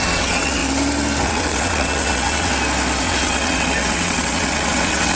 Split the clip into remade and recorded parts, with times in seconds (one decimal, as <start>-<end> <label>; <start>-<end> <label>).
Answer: 0.0-0.6 remade; 0.6-1.2 recorded; 1.2-2.5 remade; 2.5-3.0 recorded; 3.0-5.2 remade